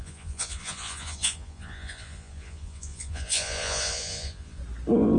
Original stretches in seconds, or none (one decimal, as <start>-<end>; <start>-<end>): 4.6-5.2